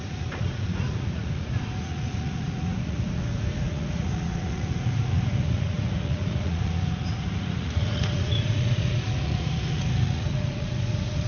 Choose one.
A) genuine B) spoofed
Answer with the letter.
B